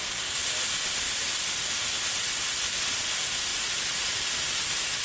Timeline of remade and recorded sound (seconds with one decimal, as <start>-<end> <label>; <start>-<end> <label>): 0.0-0.4 recorded; 0.4-1.9 remade; 1.9-5.0 recorded